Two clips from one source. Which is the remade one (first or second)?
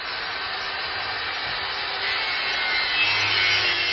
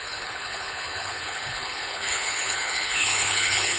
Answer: second